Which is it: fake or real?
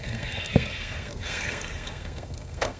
fake